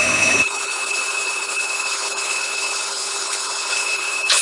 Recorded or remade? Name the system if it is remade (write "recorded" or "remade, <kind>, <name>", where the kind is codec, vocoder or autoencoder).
remade, codec, HILCodec